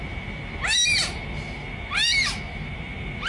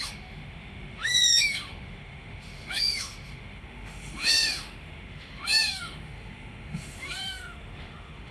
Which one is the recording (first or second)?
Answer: first